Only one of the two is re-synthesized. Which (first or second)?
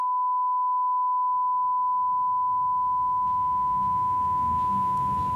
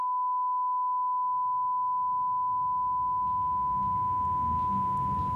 first